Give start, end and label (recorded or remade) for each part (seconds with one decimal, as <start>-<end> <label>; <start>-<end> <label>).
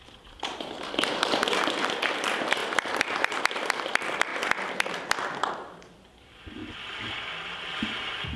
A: 0.0-4.3 remade; 4.3-5.5 recorded; 5.5-6.6 remade; 6.6-8.4 recorded